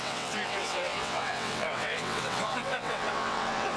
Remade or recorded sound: remade